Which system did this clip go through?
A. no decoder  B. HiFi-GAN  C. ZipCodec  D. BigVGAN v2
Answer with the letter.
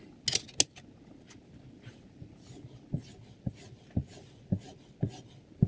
A